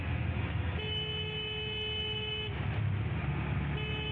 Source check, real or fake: real